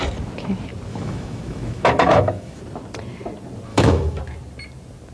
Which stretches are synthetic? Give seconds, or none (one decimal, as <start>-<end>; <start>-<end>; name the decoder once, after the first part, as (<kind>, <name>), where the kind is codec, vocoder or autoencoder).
0.9-2.6 (autoencoder, DAC-VAE); 3.7-4.2